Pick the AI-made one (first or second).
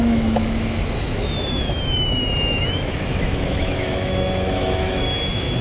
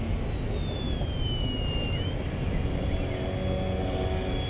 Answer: first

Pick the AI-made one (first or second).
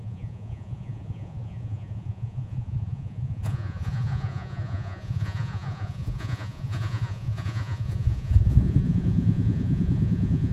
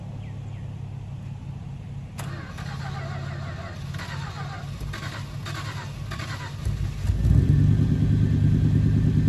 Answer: first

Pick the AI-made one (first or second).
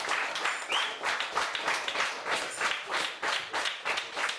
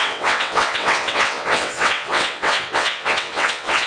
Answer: second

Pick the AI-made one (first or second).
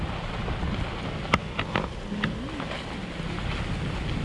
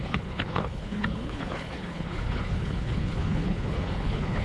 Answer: second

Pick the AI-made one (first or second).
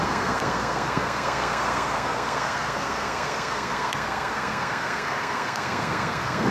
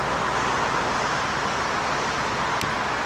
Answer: first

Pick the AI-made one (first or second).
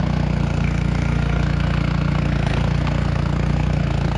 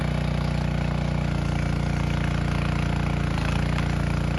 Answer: first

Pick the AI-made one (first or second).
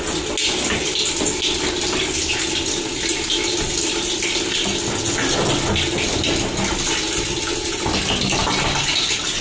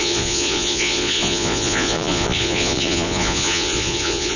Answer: second